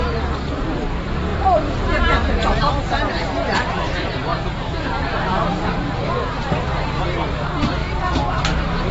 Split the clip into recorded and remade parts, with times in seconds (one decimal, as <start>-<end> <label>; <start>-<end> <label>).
0.0-1.3 recorded; 1.3-3.7 remade; 3.7-4.3 recorded; 4.3-7.0 remade; 7.0-8.9 recorded